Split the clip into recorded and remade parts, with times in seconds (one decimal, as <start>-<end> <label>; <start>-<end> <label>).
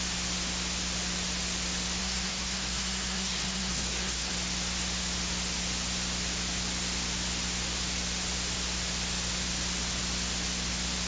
0.0-2.0 recorded; 2.0-4.3 remade; 4.3-11.1 recorded